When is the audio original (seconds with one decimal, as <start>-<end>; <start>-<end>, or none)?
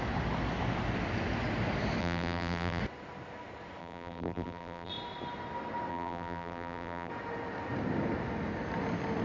0.0-2.0; 2.8-3.8; 4.9-5.9; 7.1-9.2